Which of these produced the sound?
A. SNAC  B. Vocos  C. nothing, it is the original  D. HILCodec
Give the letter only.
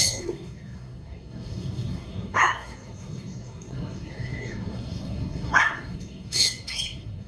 A